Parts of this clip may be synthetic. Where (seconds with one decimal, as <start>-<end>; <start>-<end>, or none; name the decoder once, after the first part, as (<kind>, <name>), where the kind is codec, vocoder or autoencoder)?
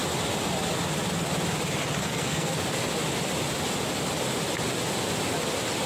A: 2.0-2.6 (codec, SNAC)